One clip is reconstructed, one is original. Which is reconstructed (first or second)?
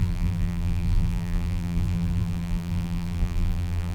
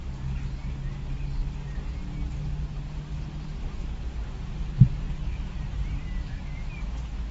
first